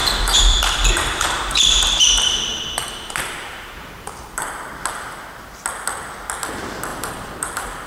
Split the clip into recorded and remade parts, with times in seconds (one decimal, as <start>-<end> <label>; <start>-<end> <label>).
0.0-4.7 remade; 4.7-6.9 recorded; 6.9-7.9 remade